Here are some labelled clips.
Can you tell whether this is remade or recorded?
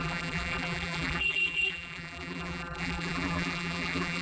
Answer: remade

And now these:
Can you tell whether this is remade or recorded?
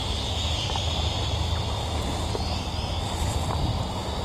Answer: recorded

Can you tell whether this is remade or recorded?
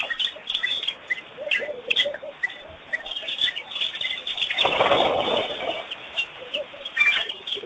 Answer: remade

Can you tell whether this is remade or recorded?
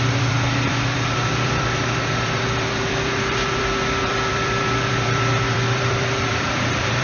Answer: remade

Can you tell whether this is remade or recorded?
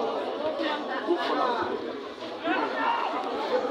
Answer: recorded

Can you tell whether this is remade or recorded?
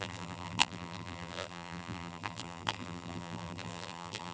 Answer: remade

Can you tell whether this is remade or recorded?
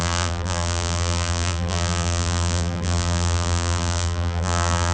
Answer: remade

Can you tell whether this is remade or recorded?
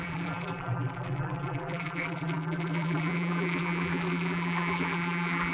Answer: remade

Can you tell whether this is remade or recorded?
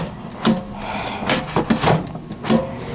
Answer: recorded